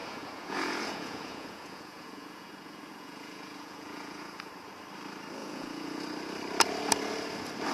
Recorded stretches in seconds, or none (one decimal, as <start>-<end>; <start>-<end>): 4.5-5.4; 6.0-7.7